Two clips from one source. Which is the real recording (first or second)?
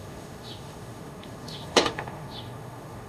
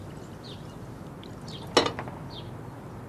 second